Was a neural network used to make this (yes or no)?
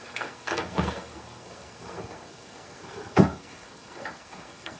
yes